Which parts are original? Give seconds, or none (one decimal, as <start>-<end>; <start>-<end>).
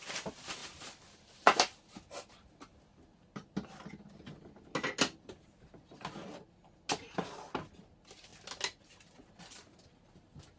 0.0-10.6